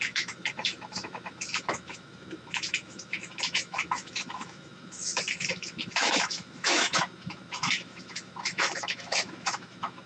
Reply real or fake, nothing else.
fake